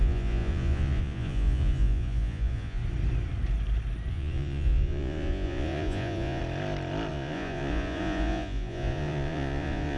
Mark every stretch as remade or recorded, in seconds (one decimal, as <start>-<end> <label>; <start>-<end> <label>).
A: 0.0-2.8 remade; 2.8-4.1 recorded; 4.1-6.4 remade; 6.4-7.1 recorded; 7.1-10.0 remade